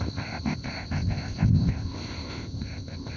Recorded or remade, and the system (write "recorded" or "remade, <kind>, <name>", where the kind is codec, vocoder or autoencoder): remade, codec, ZipCodec